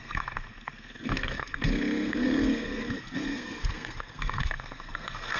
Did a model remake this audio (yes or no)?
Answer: yes